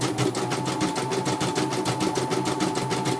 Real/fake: real